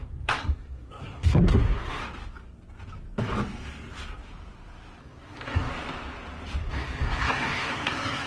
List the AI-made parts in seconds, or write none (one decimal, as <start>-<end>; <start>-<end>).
0.0-2.0; 5.0-5.7; 6.6-8.3